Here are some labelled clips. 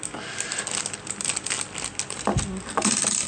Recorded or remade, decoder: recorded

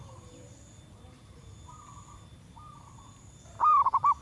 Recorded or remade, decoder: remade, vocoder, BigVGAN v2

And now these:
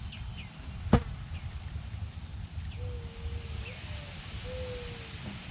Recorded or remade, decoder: recorded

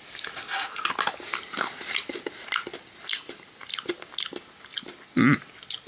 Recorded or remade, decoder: recorded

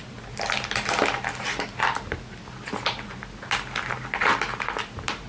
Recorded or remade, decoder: recorded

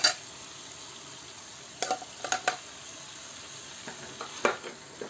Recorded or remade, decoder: recorded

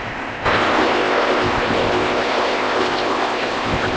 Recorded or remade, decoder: remade, codec, ZipCodec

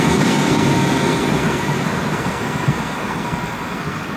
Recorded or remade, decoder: remade, codec, SNAC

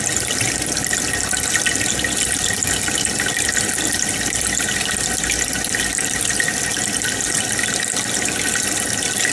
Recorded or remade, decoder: recorded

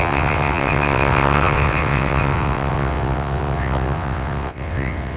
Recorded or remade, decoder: remade, vocoder, WaveNeXt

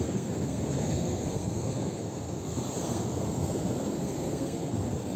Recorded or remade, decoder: remade, codec, SNAC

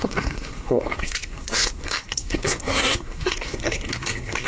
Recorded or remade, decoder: remade, codec, SNAC